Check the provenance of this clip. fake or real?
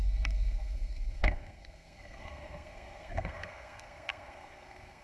fake